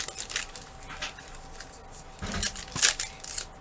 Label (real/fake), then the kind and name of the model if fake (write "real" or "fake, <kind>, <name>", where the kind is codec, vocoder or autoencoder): real